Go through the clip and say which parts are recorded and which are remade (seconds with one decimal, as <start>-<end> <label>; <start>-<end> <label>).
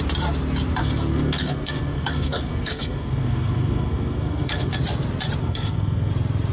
0.0-0.8 recorded; 0.8-4.7 remade; 4.7-5.4 recorded; 5.4-6.1 remade; 6.1-6.5 recorded